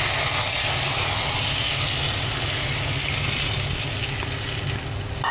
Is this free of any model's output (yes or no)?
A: yes